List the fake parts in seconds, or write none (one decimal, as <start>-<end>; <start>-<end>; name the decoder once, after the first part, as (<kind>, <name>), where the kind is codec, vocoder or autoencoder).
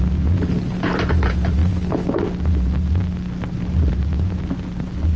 none